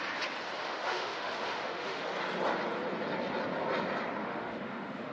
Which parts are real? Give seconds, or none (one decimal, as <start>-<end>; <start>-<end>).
0.0-0.6; 2.1-4.2